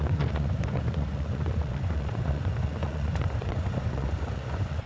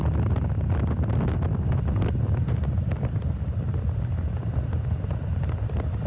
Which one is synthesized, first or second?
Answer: first